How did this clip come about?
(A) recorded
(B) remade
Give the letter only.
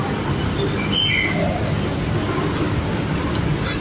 A